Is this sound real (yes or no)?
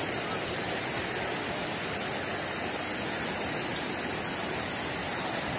yes